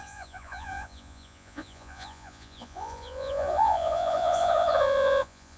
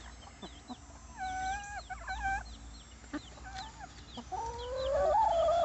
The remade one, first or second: first